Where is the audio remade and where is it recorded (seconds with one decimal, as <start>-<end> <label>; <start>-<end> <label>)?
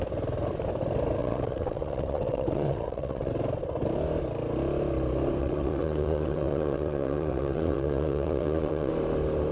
0.0-1.2 recorded; 1.2-3.3 remade; 3.3-5.4 recorded; 5.4-8.9 remade; 8.9-9.5 recorded